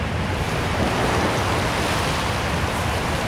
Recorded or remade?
recorded